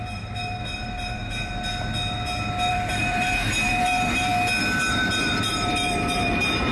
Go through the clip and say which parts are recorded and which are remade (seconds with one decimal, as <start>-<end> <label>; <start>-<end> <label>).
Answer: 0.0-1.2 remade; 1.2-2.7 recorded; 2.7-4.3 remade; 4.3-4.9 recorded; 4.9-6.7 remade